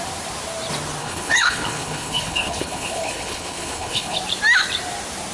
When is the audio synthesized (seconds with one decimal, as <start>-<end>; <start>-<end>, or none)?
1.0-4.2